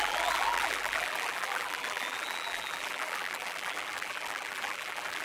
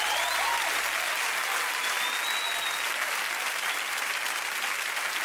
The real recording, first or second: second